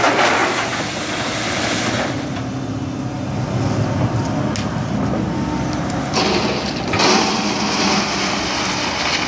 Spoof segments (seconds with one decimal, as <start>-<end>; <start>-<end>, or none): none